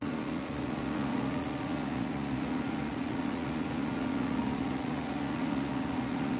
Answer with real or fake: fake